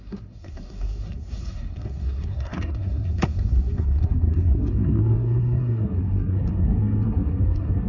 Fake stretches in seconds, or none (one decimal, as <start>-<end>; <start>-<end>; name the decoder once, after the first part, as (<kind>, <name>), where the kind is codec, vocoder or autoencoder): 0.0-7.9 (codec, SNAC)

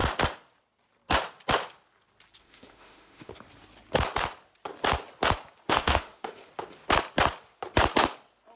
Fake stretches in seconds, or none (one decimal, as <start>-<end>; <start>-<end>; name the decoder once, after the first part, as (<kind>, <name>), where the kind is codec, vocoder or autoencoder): 2.4-3.3 (autoencoder, DAC-VAE); 5.7-6.5

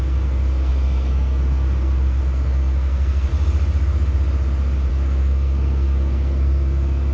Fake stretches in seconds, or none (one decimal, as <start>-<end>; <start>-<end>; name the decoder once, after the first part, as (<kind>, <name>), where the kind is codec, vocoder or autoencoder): 0.0-3.3 (codec, SNAC); 4.9-7.1

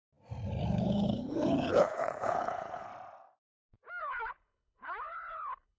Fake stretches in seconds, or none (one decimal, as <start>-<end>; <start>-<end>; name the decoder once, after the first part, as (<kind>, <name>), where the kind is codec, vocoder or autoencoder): 0.6-2.9 (codec, HILCodec); 4.0-5.8